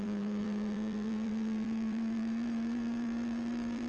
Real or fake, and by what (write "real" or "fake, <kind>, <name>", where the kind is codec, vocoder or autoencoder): fake, vocoder, BigVGAN v2